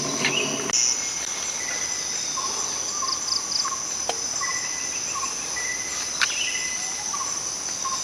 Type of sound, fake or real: real